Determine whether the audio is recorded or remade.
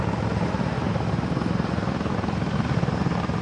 recorded